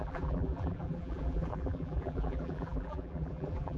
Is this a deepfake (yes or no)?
yes